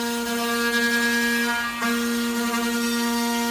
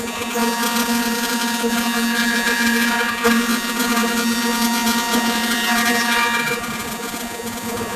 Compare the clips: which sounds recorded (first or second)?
first